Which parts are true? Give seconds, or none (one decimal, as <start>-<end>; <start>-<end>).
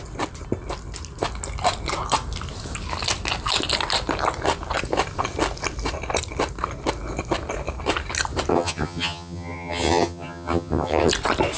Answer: 0.0-8.5; 11.1-11.6